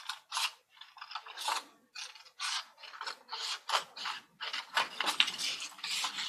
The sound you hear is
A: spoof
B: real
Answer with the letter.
B